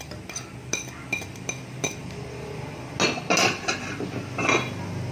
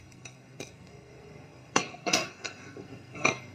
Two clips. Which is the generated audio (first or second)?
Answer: second